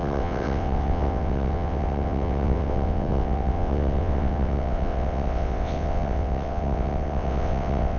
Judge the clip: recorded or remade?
remade